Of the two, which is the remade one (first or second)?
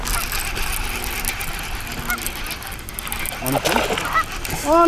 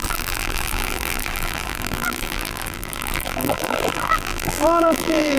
second